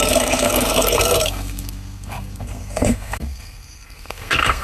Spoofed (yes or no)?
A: yes